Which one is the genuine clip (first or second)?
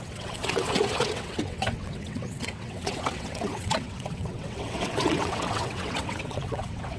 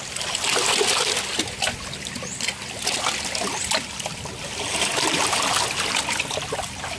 second